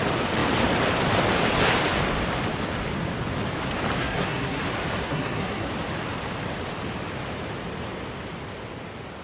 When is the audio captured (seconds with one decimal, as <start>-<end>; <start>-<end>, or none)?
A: 0.0-4.0; 4.6-5.0; 5.7-9.2